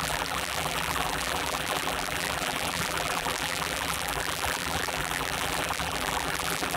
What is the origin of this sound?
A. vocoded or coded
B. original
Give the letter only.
A